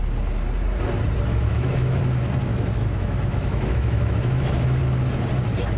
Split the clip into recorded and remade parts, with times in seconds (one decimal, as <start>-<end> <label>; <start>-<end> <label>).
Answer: 0.0-1.3 recorded; 1.3-2.0 remade; 2.0-2.5 recorded; 2.5-4.8 remade; 4.8-5.8 recorded